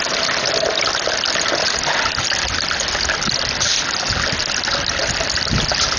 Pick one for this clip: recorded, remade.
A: recorded